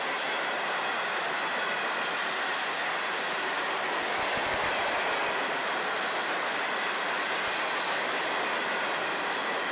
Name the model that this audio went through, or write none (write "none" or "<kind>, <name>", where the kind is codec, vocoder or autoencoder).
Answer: none